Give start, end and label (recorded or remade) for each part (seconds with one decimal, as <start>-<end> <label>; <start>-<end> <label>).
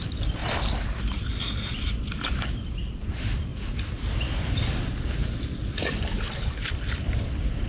0.0-0.4 remade; 0.4-1.2 recorded; 1.2-3.5 remade; 3.5-4.4 recorded; 4.4-5.2 remade; 5.2-5.7 recorded; 5.7-7.7 remade